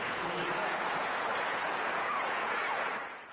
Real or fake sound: fake